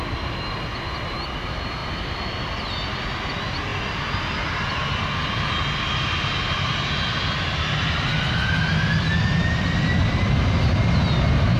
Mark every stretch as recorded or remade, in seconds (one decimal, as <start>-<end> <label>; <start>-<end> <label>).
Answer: 0.0-11.6 recorded